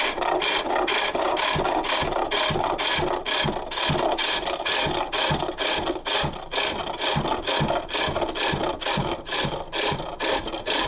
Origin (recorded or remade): recorded